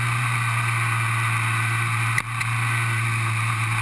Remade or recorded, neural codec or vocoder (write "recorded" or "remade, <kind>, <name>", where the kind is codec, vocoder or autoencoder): recorded